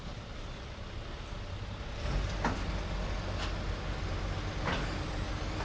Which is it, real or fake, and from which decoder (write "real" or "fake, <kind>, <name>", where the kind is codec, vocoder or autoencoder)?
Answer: real